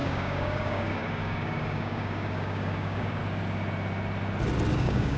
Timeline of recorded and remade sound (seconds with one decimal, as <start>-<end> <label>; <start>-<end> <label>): 0.0-3.2 remade; 3.2-4.7 recorded; 4.7-5.2 remade